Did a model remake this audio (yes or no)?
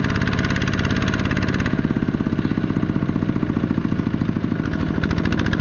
no